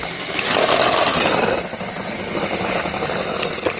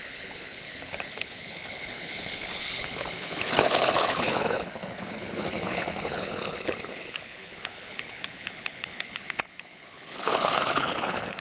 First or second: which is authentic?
first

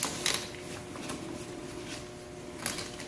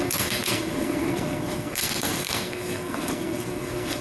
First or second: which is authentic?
first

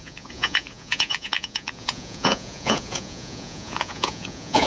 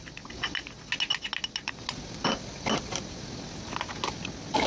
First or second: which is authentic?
second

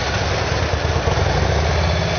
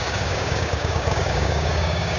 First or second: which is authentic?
first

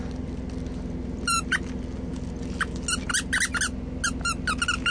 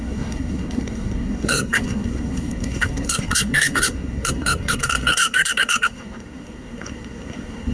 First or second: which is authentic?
first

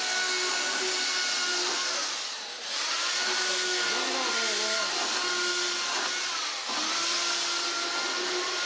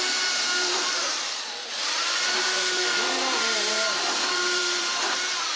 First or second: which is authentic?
first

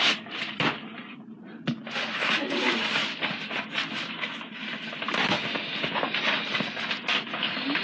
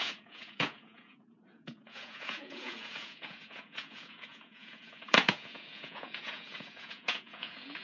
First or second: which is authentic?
first